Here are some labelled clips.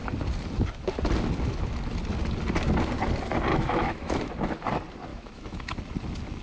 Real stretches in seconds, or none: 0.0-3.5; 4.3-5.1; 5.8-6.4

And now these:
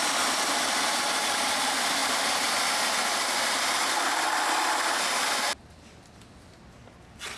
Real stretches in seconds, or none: 0.0-2.0; 4.4-7.4